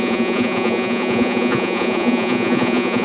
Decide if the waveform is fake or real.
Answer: fake